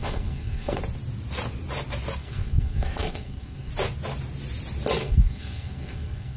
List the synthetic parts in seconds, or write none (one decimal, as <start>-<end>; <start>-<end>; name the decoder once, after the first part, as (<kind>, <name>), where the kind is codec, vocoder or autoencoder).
0.0-0.8 (codec, SNAC); 2.2-3.7; 5.0-6.4